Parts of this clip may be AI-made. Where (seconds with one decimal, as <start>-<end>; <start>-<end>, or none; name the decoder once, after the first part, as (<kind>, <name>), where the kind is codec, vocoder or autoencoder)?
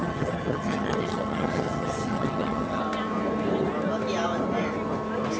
0.0-2.8 (vocoder, HiFi-GAN)